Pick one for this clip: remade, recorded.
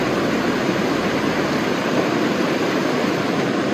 recorded